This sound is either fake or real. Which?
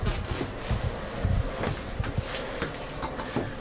real